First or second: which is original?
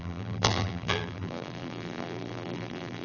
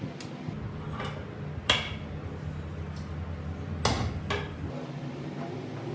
second